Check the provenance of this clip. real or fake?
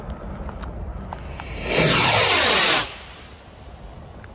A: real